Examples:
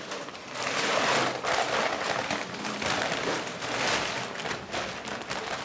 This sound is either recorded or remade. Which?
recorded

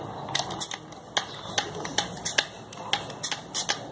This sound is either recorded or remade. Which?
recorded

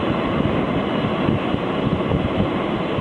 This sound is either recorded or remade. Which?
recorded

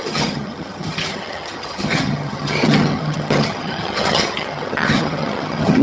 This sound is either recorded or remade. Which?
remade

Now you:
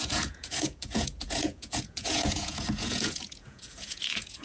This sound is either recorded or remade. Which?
remade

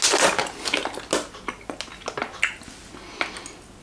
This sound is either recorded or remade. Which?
recorded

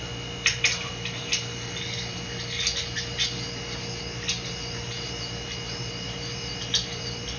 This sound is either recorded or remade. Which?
recorded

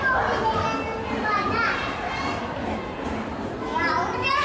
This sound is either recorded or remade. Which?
recorded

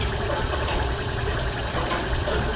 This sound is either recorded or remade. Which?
remade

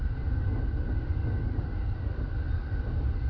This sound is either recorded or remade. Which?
recorded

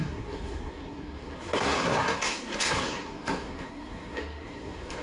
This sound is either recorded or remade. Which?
remade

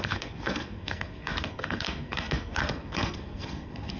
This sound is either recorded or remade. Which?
remade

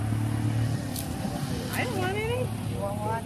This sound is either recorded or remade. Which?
recorded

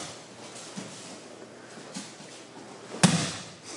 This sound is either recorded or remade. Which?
recorded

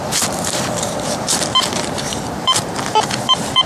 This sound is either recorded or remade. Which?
remade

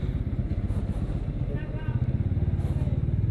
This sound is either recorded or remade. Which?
recorded